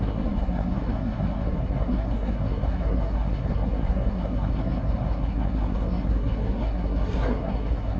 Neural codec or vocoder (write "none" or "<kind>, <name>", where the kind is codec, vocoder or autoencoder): codec, SNAC